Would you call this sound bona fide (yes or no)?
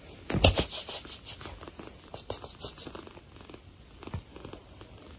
yes